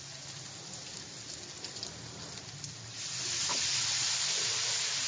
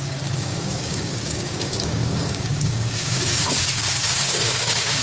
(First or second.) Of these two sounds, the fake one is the second